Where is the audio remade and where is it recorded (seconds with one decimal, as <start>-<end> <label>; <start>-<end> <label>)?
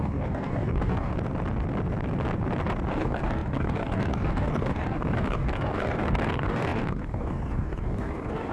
0.0-1.1 remade; 1.1-2.9 recorded; 2.9-8.5 remade